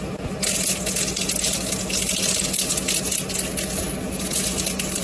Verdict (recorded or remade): recorded